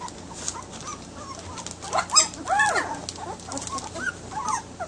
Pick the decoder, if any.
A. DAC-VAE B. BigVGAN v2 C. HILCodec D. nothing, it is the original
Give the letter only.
D